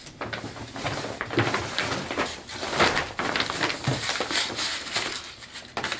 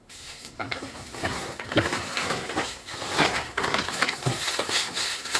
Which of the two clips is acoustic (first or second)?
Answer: first